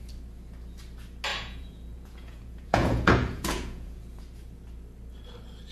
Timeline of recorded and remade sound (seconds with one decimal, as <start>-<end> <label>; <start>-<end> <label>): 0.0-1.3 recorded; 1.3-4.2 remade; 4.2-5.7 recorded